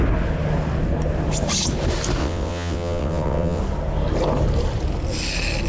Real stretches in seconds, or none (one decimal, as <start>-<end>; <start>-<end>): 0.0-2.2; 3.6-5.7